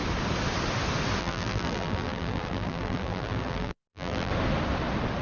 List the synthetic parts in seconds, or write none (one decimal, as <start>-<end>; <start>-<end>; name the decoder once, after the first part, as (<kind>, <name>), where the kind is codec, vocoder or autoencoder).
1.2-4.3 (vocoder, BigVGAN v2)